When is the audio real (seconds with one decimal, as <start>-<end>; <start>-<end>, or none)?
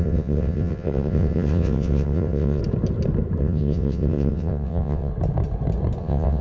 2.6-3.4; 5.1-6.0